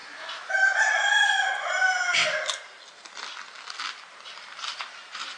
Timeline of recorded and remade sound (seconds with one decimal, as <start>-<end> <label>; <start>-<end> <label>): 0.0-0.5 recorded; 0.5-2.2 remade; 2.2-4.1 recorded; 4.1-5.4 remade